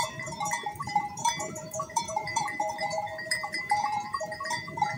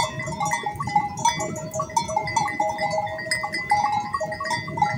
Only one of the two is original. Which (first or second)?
second